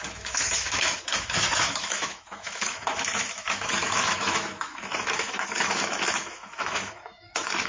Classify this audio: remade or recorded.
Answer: remade